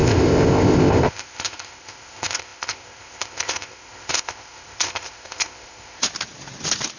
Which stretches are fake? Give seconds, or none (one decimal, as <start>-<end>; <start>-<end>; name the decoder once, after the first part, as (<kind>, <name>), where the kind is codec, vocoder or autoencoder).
0.0-6.0 (codec, ZipCodec)